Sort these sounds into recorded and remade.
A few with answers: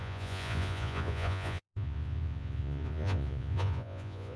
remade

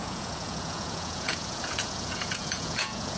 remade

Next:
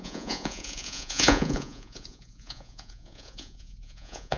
remade